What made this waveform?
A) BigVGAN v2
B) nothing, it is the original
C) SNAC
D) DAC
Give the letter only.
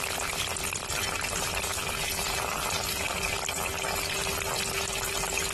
B